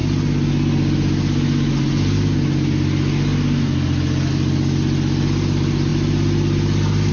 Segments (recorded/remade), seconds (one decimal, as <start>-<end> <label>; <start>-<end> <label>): 0.0-7.1 recorded